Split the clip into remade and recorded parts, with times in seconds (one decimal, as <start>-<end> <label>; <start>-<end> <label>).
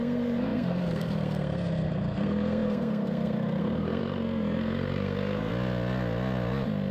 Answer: 0.0-5.5 remade; 5.5-6.9 recorded